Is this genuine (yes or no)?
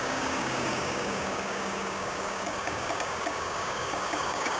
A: no